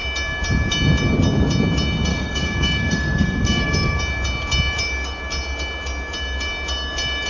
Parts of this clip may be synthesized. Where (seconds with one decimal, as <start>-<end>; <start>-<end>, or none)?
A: 2.1-4.0